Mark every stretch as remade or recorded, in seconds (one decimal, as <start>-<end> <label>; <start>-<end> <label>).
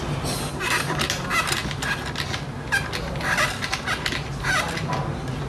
0.0-5.5 recorded